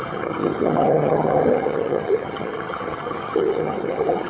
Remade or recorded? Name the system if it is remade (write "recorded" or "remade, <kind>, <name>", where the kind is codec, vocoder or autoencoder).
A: remade, vocoder, HiFi-GAN